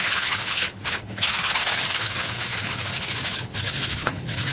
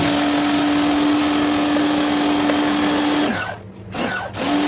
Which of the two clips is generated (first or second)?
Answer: first